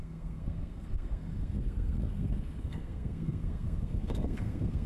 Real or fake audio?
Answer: fake